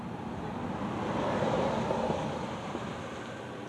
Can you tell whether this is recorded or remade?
recorded